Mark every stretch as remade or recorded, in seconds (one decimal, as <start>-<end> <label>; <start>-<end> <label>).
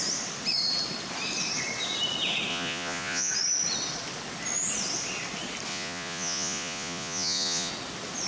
0.0-2.5 recorded; 2.5-3.3 remade; 3.3-5.7 recorded; 5.7-7.7 remade; 7.7-8.3 recorded